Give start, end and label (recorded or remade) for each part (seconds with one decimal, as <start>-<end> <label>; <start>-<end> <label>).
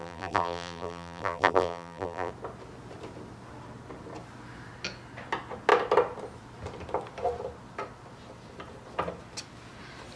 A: 0.0-2.3 remade; 2.3-10.2 recorded